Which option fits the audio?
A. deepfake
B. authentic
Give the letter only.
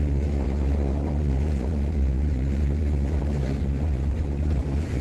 A